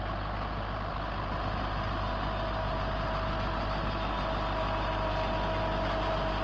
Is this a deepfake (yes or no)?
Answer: no